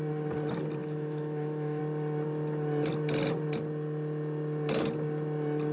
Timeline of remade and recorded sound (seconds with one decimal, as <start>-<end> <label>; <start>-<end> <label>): 0.0-0.8 recorded; 0.8-1.8 remade; 1.8-5.7 recorded